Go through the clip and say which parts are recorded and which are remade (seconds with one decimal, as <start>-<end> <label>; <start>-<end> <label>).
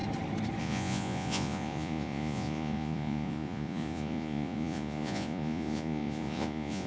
0.0-0.6 recorded; 0.6-6.9 remade